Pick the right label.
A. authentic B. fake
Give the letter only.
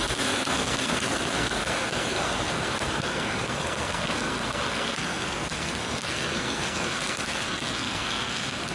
B